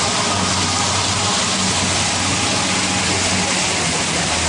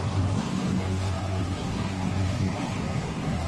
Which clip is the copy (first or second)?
second